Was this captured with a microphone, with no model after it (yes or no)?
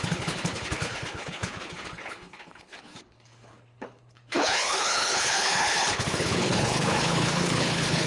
no